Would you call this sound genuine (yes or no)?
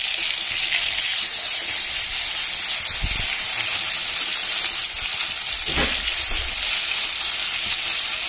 yes